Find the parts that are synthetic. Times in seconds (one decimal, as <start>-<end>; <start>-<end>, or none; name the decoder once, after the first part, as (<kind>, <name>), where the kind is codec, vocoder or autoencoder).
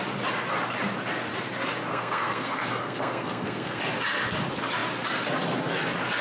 1.9-3.8 (codec, SNAC)